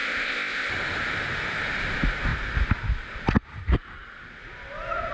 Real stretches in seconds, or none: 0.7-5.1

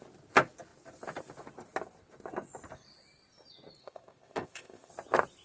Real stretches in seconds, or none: 0.0-3.8; 4.9-5.4

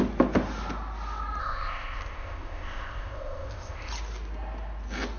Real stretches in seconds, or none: 0.0-1.4; 3.9-5.2

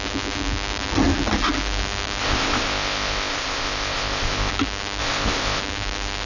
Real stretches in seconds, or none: 0.0-2.2; 4.5-5.0; 5.6-6.3